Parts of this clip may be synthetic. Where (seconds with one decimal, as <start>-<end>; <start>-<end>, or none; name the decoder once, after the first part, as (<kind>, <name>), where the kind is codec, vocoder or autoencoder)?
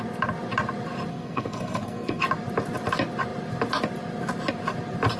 1.1-2.2 (codec, SNAC)